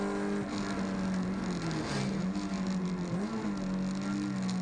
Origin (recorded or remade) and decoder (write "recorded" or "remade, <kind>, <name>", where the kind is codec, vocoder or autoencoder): recorded